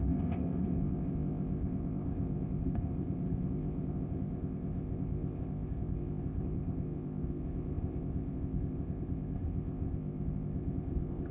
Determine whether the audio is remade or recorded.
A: remade